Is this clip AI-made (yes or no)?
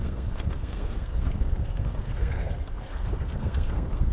yes